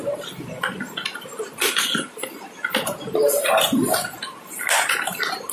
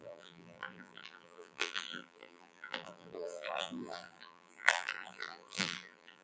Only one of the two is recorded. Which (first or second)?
first